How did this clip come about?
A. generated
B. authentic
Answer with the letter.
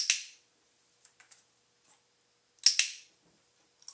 B